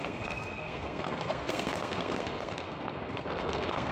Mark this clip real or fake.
fake